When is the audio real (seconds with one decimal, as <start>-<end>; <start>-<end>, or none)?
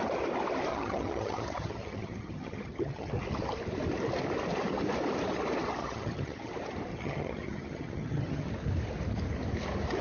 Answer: 0.0-0.7; 3.1-5.8; 6.5-6.9; 8.5-10.0